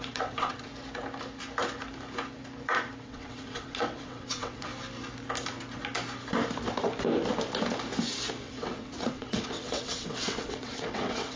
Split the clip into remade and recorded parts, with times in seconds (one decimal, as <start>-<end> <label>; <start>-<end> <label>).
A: 0.0-0.7 remade; 0.7-3.0 recorded; 3.0-4.7 remade; 4.7-8.4 recorded; 8.4-11.4 remade